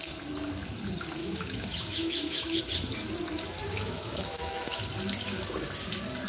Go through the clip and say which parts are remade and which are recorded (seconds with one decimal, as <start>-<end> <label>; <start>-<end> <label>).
0.0-1.2 recorded; 1.2-2.6 remade; 2.6-3.7 recorded; 3.7-4.8 remade; 4.8-6.3 recorded